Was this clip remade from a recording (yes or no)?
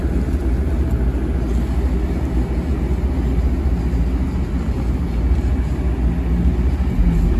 no